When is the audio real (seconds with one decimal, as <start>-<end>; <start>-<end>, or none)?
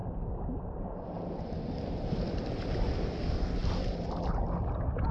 0.0-5.1